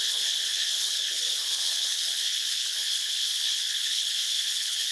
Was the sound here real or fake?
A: fake